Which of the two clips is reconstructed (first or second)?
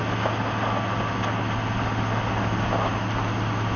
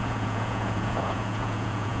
second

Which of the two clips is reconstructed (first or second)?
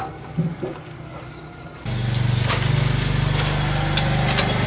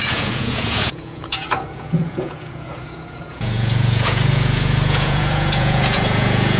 second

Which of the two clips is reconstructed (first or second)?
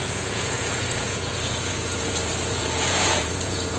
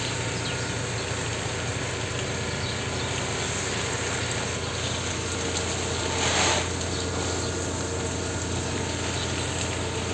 first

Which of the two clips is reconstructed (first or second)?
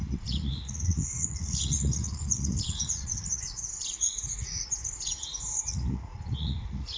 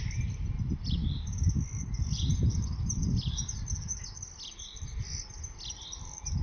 first